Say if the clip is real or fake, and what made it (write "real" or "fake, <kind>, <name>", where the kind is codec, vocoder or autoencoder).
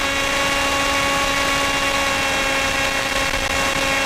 real